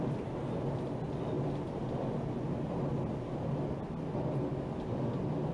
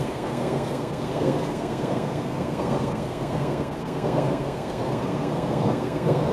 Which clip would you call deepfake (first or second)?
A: second